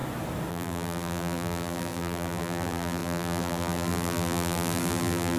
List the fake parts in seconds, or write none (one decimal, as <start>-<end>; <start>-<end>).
0.5-5.4

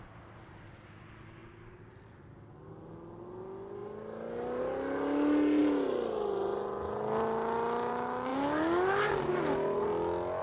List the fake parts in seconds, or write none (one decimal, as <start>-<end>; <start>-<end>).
none

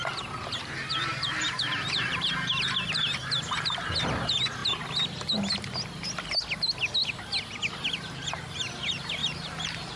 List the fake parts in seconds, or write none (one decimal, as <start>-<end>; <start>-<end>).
0.9-2.3; 9.2-10.0

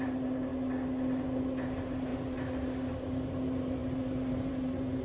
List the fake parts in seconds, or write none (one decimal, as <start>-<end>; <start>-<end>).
0.0-0.5; 1.4-2.1; 2.9-5.0

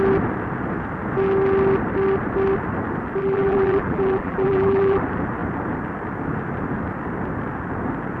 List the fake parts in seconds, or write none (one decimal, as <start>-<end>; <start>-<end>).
3.2-5.0

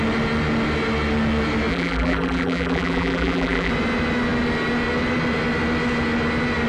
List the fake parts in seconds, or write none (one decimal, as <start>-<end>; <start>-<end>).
1.7-3.7